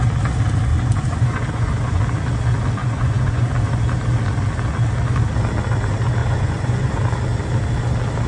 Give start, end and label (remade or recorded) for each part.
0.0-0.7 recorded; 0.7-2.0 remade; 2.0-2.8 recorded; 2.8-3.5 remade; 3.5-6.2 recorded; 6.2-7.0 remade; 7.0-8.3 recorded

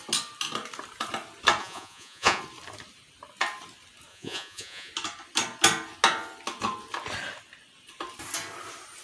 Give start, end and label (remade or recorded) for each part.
0.0-1.6 recorded; 1.6-2.4 remade; 2.4-4.1 recorded; 4.1-4.9 remade; 4.9-9.0 recorded

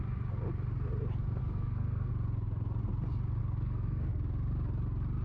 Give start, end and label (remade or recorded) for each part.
0.0-1.4 recorded; 1.4-2.1 remade; 2.1-3.4 recorded; 3.4-4.1 remade; 4.1-5.2 recorded

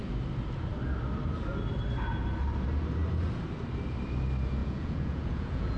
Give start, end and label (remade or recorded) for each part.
0.0-4.6 recorded; 4.6-5.8 remade